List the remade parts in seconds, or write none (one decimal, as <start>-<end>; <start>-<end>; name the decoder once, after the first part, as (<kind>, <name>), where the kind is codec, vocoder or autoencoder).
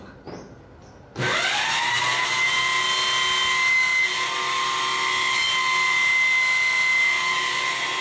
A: none